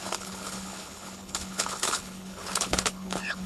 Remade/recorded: remade